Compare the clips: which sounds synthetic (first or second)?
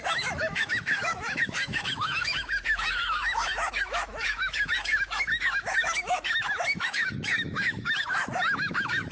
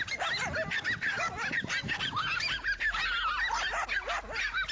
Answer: first